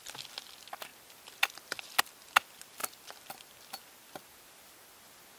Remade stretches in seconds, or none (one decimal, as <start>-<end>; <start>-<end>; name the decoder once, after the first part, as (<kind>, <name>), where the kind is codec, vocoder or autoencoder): none